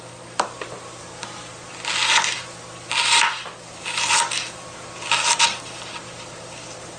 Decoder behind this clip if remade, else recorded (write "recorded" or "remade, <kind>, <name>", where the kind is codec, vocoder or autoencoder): remade, vocoder, BigVGAN v2